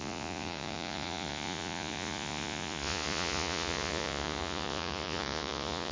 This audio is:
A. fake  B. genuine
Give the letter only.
A